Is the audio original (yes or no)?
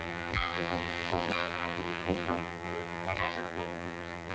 no